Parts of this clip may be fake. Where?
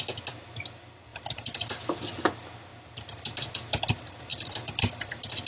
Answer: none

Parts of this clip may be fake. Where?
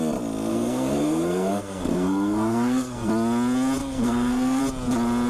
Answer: 0.5-3.1; 3.8-4.6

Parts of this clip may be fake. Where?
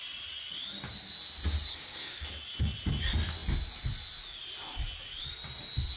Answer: 1.7-2.3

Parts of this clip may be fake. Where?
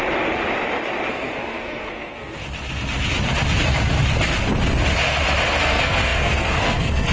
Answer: 1.1-2.4; 5.6-7.1